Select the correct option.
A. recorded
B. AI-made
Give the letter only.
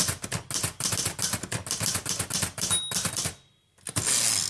A